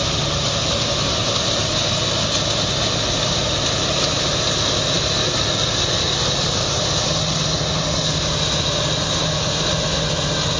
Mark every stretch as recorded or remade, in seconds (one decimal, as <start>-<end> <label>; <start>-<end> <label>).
0.0-10.6 recorded